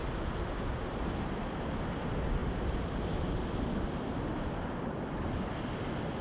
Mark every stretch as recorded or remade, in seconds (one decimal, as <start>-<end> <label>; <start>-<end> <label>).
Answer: 0.0-6.2 recorded